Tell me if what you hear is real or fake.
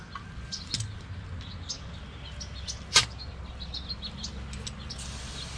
real